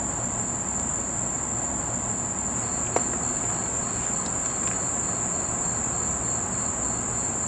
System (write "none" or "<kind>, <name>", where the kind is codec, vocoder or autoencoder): none